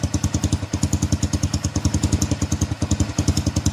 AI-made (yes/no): no